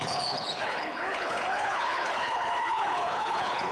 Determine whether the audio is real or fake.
fake